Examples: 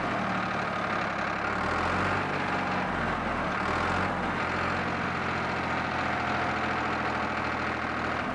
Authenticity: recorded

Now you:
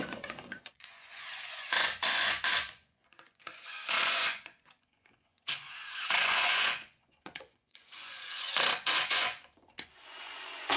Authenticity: remade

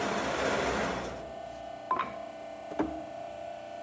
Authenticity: recorded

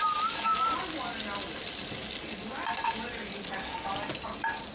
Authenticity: recorded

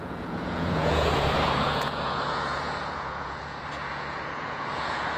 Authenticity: remade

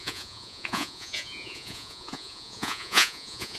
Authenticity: remade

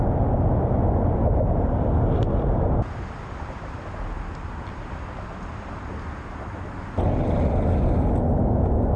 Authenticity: recorded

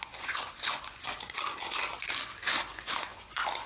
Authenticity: remade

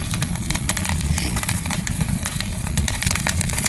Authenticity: remade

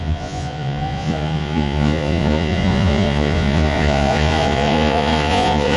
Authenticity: remade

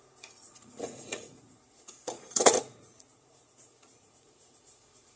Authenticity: remade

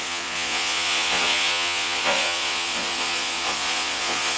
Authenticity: remade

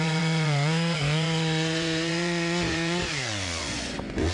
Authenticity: remade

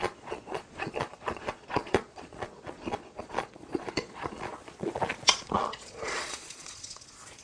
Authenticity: remade